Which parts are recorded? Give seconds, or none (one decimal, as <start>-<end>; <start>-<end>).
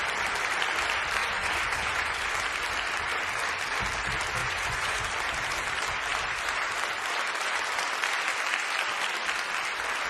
0.0-1.2; 2.3-4.4; 5.0-10.1